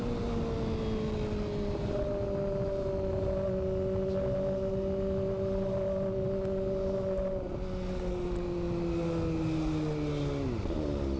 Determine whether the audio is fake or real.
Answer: real